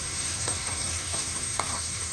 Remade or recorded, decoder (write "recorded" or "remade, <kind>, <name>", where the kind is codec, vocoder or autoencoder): remade, codec, SNAC